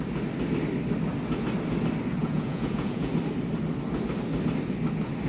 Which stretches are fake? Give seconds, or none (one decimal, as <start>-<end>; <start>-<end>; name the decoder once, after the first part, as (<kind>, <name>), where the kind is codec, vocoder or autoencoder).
2.2-3.1 (vocoder, Vocos)